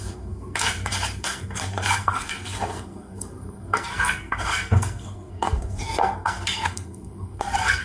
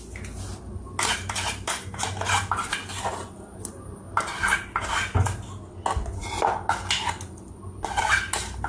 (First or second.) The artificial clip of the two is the first